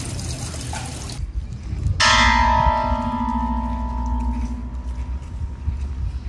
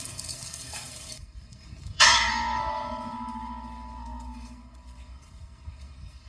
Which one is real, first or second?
first